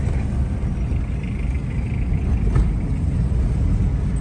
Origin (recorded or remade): recorded